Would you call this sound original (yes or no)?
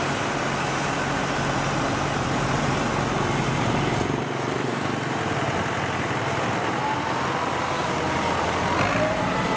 yes